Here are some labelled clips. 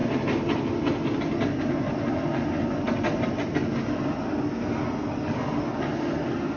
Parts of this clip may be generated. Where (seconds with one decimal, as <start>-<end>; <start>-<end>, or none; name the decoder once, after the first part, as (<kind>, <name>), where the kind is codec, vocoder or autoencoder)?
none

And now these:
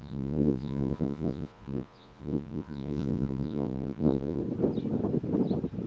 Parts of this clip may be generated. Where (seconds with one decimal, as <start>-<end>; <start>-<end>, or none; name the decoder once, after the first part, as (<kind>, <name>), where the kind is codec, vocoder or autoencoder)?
0.0-4.4 (vocoder, Vocos)

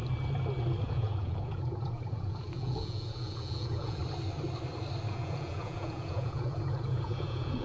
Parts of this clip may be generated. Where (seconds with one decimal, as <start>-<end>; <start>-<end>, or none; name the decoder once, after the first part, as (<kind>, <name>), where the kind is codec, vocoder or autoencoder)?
0.8-4.0 (vocoder, Vocos); 5.1-7.6